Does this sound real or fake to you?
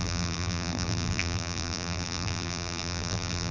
fake